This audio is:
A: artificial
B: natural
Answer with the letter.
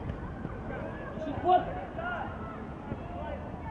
B